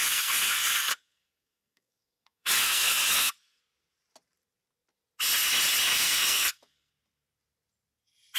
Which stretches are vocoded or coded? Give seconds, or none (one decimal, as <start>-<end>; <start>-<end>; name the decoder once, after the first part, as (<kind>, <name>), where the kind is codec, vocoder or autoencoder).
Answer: 0.0-3.6 (codec, SNAC); 5.9-6.9